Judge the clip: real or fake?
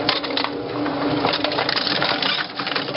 fake